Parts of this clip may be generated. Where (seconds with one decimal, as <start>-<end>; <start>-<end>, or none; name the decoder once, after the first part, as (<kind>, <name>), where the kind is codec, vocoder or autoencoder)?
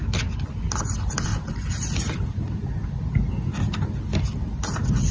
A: none